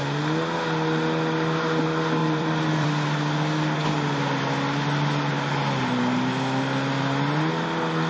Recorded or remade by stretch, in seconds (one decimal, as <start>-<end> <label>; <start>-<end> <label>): 0.0-2.2 recorded; 2.2-2.9 remade; 2.9-8.1 recorded